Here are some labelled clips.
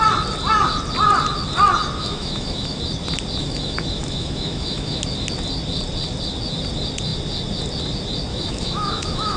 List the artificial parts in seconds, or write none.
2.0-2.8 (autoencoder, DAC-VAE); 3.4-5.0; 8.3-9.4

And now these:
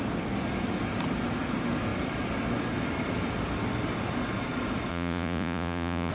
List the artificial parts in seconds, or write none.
4.9-6.1 (vocoder, Vocos)

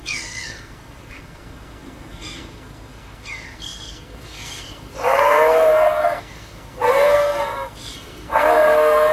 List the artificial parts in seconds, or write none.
0.0-9.1 (codec, SNAC)

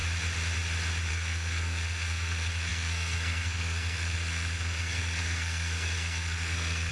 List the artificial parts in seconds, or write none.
1.1-6.9 (codec, SNAC)

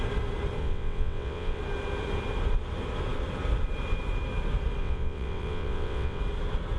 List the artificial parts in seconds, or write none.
0.6-1.6 (vocoder, WaveNeXt); 4.8-6.2

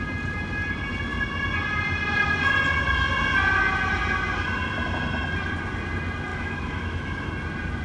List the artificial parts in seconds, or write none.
6.3-7.3 (autoencoder, DAC-VAE)